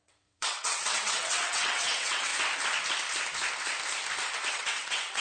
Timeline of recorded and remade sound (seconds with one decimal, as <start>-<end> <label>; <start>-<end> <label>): 0.0-2.3 remade; 2.3-4.5 recorded; 4.5-5.2 remade